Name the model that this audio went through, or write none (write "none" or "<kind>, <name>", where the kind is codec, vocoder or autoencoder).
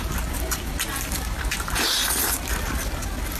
none